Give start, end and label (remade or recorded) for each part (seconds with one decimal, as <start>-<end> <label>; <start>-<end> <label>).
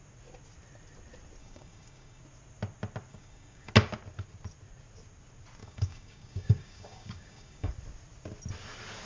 0.0-1.4 recorded; 1.4-2.2 remade; 2.2-3.1 recorded; 3.1-3.7 remade; 3.7-5.6 recorded; 5.6-7.7 remade; 7.7-9.1 recorded